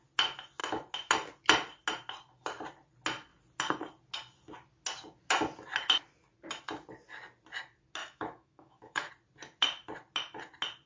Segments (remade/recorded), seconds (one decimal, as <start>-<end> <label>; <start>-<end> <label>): 0.0-8.0 recorded; 8.0-9.1 remade; 9.1-10.9 recorded